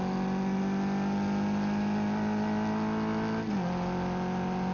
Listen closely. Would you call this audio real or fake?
real